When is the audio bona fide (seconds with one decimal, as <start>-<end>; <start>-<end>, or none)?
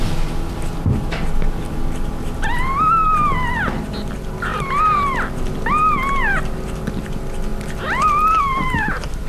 0.0-9.3